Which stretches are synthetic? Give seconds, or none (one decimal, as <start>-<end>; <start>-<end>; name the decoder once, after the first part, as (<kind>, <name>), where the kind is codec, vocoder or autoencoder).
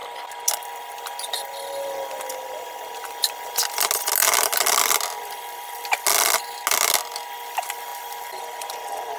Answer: none